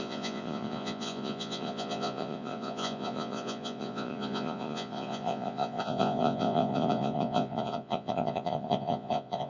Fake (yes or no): yes